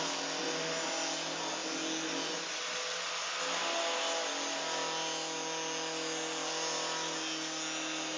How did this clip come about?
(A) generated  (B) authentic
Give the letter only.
B